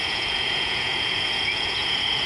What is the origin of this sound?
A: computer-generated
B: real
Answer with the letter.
A